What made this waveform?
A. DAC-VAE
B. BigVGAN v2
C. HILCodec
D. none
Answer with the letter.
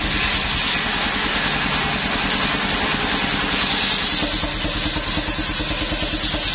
D